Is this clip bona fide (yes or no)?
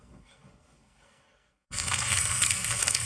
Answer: no